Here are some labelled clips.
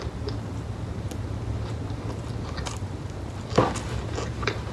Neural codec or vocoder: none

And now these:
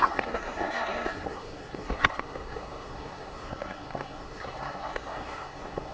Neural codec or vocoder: codec, SNAC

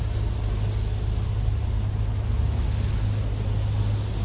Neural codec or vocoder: none